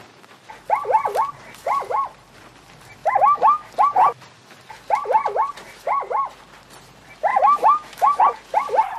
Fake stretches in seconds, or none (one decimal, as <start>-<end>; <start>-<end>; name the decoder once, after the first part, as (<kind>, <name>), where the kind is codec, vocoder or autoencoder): 3.0-3.7 (autoencoder, DAC-VAE); 7.3-8.2